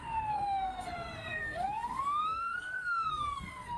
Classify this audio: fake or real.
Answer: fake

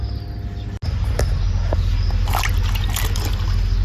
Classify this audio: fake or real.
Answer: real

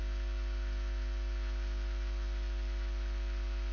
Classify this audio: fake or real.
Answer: real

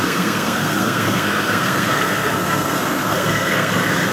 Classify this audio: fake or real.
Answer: fake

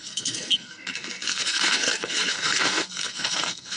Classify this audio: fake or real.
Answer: fake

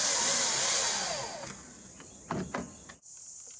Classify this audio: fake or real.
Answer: real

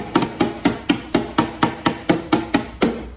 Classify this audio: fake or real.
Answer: real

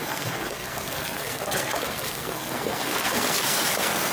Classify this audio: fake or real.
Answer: fake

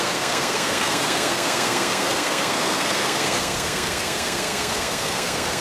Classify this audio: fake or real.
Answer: fake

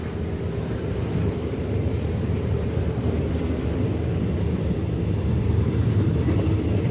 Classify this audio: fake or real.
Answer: real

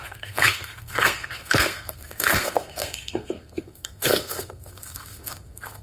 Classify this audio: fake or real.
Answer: fake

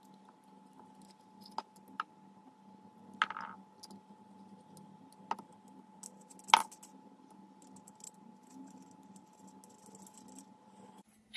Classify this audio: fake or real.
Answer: real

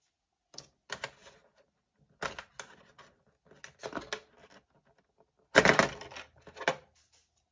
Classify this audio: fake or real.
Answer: real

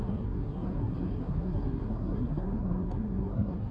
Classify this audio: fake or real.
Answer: fake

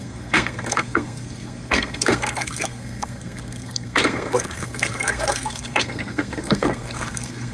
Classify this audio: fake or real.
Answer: fake